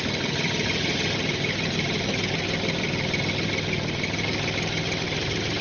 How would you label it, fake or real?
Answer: real